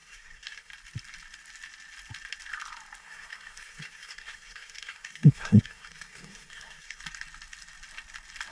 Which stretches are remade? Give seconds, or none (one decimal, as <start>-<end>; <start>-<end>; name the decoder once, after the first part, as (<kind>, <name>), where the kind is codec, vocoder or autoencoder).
0.0-0.7 (codec, SNAC); 3.0-7.0